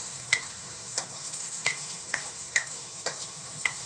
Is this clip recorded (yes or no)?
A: no